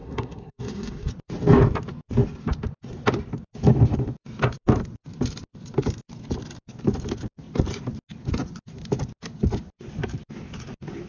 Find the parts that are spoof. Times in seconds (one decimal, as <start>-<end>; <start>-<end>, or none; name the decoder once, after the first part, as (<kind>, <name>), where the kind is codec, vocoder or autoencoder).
0.0-1.1 (codec, SNAC)

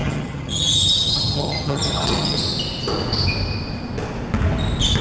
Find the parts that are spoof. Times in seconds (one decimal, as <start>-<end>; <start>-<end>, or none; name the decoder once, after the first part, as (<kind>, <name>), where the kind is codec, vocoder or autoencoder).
0.0-2.4 (vocoder, HiFi-GAN)

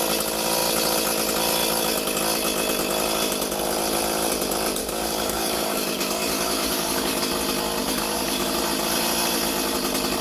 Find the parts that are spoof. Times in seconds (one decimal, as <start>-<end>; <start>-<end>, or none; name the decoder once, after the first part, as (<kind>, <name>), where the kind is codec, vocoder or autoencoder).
4.8-7.3 (codec, DAC); 7.8-8.5

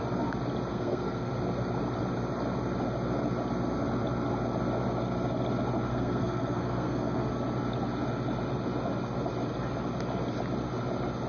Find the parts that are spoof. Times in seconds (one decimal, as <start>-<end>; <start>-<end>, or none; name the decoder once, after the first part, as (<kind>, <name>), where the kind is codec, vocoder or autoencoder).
0.7-1.3 (codec, SNAC); 5.9-7.3

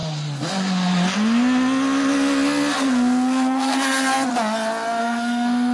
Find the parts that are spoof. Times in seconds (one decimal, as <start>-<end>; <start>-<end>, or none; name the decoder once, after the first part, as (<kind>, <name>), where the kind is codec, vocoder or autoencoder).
2.8-4.3 (codec, SNAC); 5.0-5.7

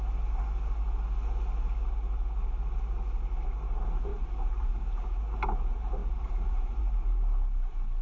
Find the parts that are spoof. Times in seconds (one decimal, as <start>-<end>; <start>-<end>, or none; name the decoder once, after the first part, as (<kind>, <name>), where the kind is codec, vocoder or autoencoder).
4.1-5.2 (vocoder, BigVGAN v2); 6.0-6.8

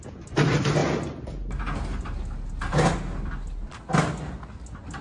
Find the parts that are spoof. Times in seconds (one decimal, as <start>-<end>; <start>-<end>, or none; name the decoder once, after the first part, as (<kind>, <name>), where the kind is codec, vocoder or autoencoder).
none